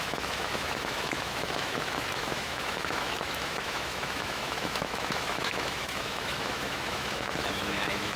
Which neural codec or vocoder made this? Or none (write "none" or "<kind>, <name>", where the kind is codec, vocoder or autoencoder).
autoencoder, DAC-VAE